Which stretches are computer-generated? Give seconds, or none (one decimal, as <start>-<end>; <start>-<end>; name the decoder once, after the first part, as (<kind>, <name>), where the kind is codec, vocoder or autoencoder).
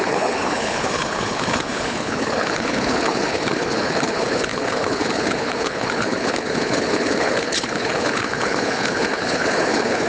0.0-10.1 (codec, HILCodec)